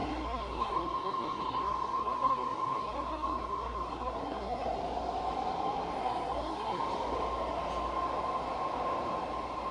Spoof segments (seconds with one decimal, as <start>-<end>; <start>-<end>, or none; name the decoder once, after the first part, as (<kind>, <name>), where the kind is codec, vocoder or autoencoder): 0.0-4.8 (codec, SNAC); 6.0-6.8